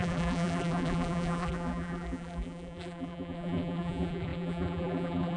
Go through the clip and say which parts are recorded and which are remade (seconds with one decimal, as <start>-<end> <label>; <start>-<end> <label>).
0.0-5.4 remade